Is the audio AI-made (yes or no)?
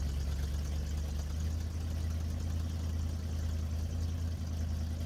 no